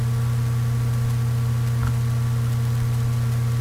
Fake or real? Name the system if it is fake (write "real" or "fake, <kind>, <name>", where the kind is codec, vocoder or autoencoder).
real